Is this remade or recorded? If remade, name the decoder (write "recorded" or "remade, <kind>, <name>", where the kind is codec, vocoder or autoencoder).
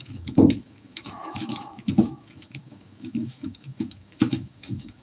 remade, autoencoder, DAC-VAE